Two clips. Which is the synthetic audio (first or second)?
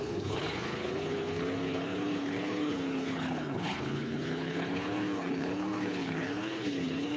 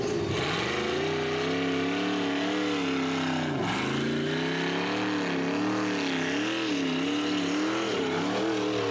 first